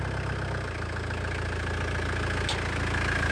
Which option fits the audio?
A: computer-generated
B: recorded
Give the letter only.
B